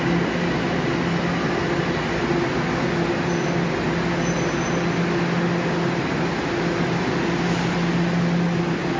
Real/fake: real